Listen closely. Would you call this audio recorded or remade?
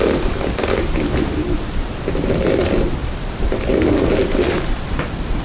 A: remade